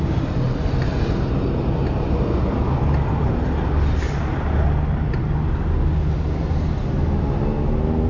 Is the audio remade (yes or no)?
no